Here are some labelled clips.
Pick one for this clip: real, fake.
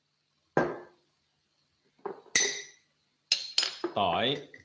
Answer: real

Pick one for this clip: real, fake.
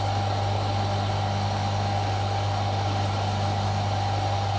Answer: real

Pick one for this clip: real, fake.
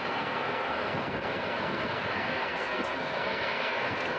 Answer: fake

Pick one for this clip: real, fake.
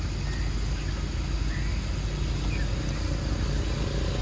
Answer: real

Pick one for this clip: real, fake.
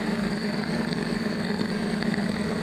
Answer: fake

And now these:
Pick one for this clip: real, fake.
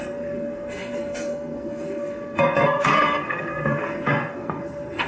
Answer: fake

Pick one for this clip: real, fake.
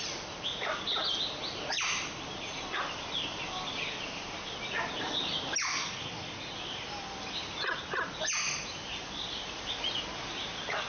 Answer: real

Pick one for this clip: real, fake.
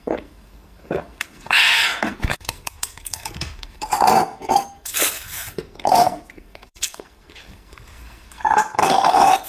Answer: fake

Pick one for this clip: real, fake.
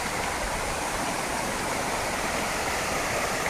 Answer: real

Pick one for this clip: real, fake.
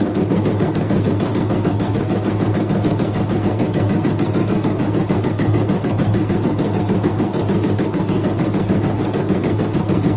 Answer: fake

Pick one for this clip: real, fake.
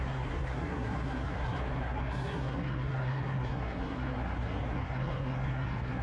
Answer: fake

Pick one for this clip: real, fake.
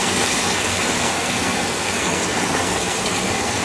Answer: fake